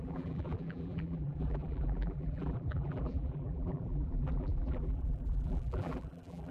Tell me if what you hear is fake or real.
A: fake